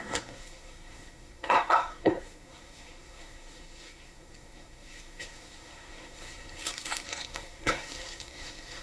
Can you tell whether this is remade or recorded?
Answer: remade